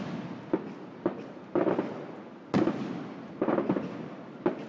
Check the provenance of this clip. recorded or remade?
recorded